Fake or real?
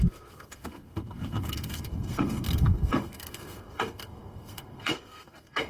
fake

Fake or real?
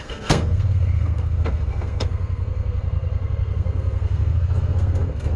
fake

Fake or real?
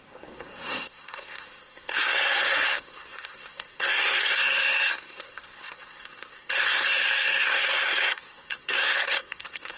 fake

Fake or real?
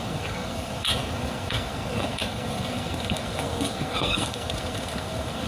fake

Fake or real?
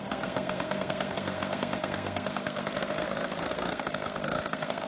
fake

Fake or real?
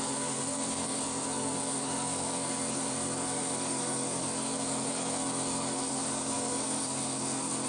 fake